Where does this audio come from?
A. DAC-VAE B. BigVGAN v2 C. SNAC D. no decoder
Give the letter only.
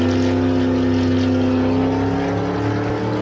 D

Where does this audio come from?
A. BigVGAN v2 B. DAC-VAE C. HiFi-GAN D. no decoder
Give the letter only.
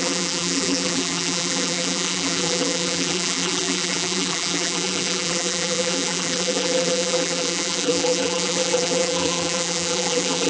A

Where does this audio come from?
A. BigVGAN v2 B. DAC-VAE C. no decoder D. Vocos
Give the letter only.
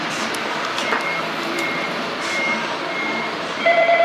A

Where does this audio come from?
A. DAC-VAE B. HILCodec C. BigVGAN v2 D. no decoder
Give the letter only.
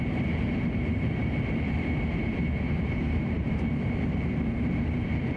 C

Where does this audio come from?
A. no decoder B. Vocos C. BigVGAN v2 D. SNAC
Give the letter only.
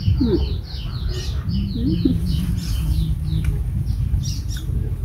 A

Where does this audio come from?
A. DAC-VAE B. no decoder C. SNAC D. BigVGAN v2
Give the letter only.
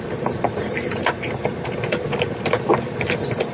D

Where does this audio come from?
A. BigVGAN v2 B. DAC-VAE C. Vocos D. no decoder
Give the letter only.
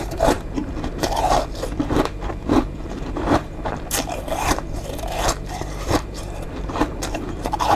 A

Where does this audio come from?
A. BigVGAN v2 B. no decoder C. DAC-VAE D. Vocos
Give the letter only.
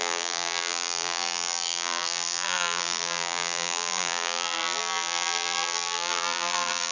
A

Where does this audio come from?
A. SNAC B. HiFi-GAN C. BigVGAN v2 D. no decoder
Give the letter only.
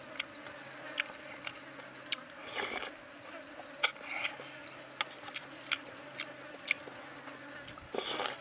D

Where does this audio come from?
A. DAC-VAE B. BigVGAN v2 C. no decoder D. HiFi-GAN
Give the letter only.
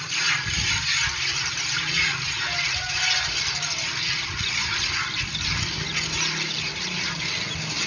C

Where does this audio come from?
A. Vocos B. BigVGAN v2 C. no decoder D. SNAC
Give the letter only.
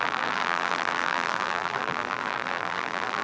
B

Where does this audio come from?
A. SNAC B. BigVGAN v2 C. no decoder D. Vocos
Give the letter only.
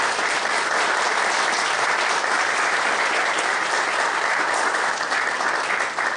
B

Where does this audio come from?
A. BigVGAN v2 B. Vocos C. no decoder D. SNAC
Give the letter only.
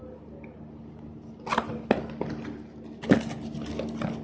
C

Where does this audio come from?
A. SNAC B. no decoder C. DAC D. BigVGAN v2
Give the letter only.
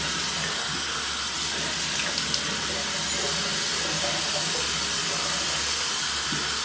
B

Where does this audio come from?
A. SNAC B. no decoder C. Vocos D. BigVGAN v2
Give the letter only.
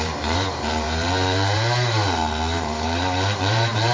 D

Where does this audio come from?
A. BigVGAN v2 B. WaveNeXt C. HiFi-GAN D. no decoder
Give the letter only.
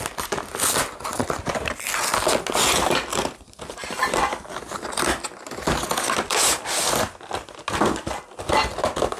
D